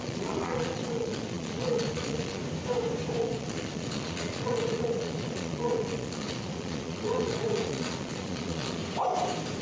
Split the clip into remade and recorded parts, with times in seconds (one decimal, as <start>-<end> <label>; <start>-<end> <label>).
0.0-2.4 remade; 2.4-3.2 recorded; 3.2-8.8 remade; 8.8-9.6 recorded